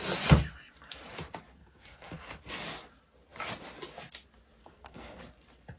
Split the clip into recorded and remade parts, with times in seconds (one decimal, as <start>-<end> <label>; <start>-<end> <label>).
0.0-1.6 recorded; 1.6-2.5 remade; 2.5-4.6 recorded; 4.6-5.2 remade; 5.2-5.8 recorded